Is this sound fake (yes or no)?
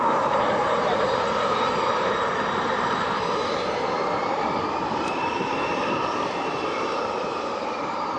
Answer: yes